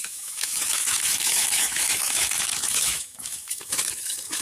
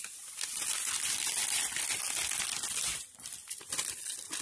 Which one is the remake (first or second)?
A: first